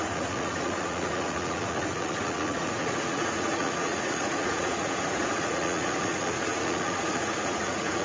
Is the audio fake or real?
fake